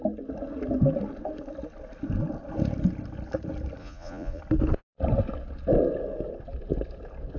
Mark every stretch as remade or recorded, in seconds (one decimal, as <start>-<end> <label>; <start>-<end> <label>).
0.0-3.8 recorded; 3.8-4.4 remade; 4.4-7.4 recorded